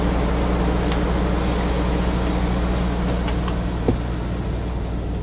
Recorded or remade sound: recorded